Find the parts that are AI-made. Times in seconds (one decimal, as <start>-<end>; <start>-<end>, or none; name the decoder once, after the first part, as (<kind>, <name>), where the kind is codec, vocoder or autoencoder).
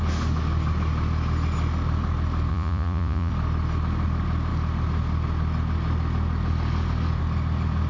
2.5-3.3 (vocoder, Vocos)